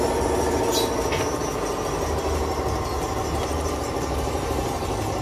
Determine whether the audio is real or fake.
real